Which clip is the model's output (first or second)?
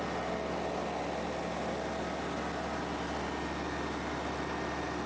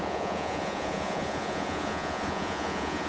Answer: second